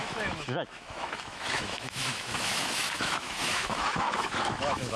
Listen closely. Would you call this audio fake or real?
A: fake